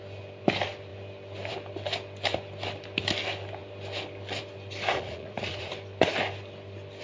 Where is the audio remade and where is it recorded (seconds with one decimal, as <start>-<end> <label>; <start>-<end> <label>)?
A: 0.0-4.9 recorded; 4.9-5.7 remade; 5.7-7.0 recorded